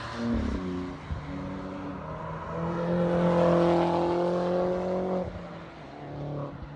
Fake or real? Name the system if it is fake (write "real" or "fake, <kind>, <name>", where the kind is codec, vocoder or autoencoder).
real